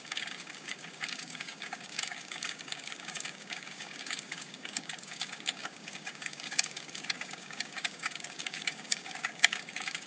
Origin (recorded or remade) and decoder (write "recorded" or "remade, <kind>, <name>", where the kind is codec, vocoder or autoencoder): remade, codec, DAC